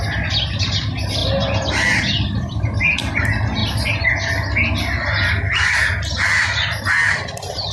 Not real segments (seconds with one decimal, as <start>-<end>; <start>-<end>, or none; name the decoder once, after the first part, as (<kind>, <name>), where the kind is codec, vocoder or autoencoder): 1.2-2.0 (vocoder, BigVGAN v2)

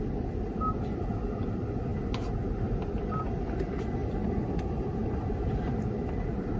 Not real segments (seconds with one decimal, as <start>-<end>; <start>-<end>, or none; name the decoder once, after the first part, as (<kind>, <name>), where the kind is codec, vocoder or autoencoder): none

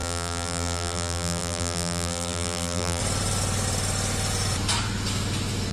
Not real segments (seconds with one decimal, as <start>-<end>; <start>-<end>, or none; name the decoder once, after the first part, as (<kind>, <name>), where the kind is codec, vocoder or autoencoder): 0.0-3.0 (vocoder, BigVGAN v2)

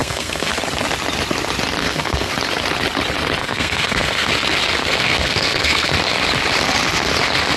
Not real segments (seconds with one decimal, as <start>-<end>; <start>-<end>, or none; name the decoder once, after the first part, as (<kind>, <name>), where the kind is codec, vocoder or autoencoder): 0.0-0.5 (codec, SNAC); 1.8-2.3; 3.4-4.3; 4.8-5.9